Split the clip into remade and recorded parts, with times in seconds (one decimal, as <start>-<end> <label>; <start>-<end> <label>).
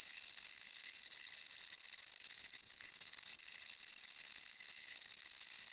0.0-1.0 remade; 1.0-2.1 recorded; 2.1-3.3 remade; 3.3-4.1 recorded; 4.1-5.7 remade